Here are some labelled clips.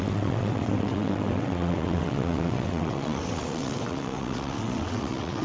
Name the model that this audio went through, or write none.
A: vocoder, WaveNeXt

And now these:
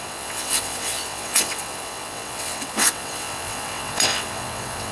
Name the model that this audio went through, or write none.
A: vocoder, WaveNeXt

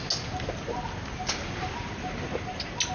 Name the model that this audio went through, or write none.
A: none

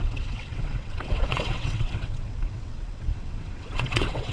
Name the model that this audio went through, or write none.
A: vocoder, WaveNeXt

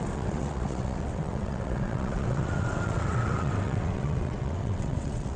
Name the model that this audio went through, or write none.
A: vocoder, WaveNeXt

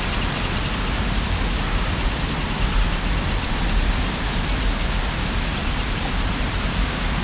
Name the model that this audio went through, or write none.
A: none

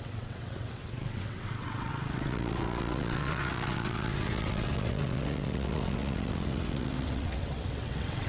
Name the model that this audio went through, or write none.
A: vocoder, WaveNeXt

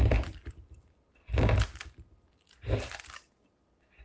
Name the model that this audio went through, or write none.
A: none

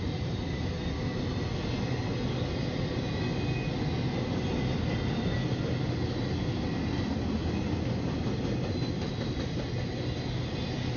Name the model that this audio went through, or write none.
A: none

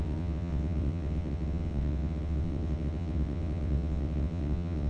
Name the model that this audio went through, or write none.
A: vocoder, WaveNeXt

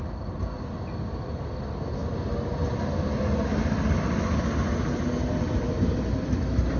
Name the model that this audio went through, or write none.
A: none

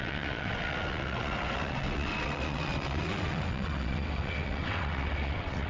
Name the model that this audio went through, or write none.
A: vocoder, WaveNeXt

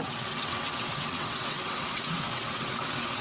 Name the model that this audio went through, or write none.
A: vocoder, WaveNeXt